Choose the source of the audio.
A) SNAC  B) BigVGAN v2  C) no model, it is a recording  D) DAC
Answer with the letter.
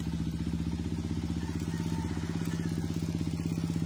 C